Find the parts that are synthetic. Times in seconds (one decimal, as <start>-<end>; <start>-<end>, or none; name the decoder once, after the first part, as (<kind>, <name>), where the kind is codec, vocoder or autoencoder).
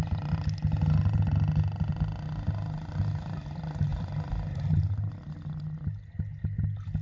none